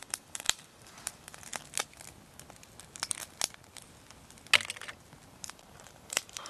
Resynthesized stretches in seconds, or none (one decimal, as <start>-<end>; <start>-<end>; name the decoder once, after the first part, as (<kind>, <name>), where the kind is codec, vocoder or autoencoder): 0.0-1.5 (vocoder, BigVGAN v2); 5.3-6.5